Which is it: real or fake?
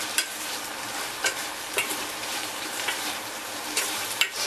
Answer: fake